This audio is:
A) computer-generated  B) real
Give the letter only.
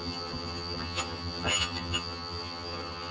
A